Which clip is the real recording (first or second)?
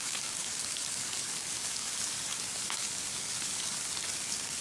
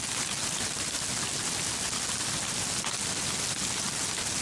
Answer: second